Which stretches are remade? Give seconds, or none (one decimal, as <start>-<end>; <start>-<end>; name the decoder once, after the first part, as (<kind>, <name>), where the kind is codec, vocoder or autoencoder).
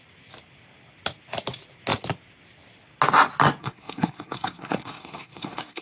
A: 3.6-5.8 (codec, SNAC)